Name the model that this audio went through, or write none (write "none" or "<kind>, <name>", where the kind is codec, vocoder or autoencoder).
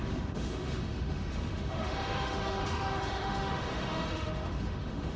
autoencoder, DAC-VAE